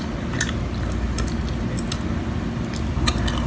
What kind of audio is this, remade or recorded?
recorded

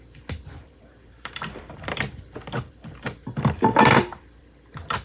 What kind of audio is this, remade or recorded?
remade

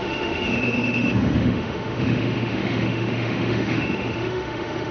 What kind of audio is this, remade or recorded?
remade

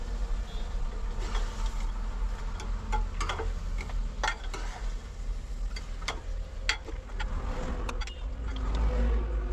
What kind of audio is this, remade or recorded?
recorded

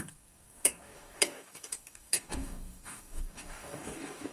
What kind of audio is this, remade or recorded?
remade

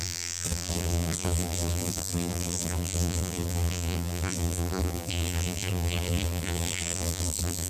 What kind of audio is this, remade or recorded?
remade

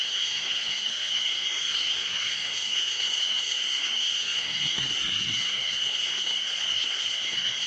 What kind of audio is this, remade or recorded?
remade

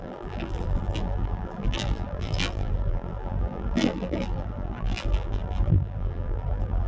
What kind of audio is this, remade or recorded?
remade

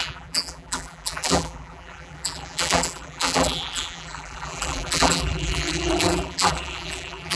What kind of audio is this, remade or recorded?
remade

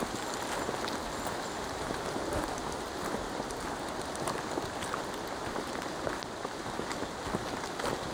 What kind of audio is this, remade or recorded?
recorded